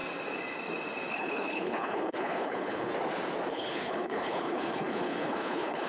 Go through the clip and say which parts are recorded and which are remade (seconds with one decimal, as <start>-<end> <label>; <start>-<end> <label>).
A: 0.0-1.1 recorded; 1.1-2.9 remade; 2.9-3.5 recorded; 3.5-5.9 remade